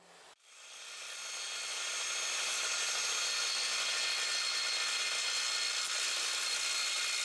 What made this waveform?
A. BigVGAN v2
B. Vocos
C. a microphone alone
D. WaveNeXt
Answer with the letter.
C